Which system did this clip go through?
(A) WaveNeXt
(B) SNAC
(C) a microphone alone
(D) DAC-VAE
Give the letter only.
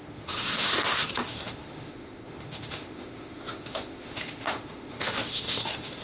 D